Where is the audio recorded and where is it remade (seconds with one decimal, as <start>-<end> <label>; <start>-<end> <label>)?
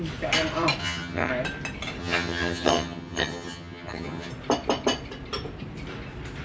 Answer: 0.0-0.8 recorded; 0.8-1.3 remade; 1.3-2.0 recorded; 2.0-4.3 remade; 4.3-6.4 recorded